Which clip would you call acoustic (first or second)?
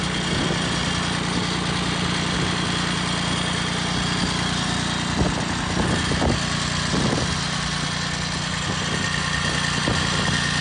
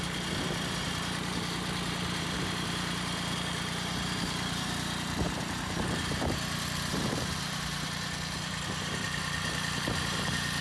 first